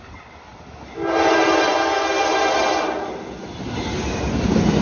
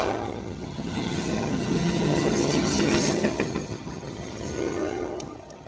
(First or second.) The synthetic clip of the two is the second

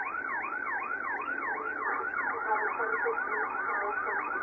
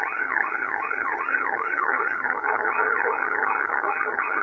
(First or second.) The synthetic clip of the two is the second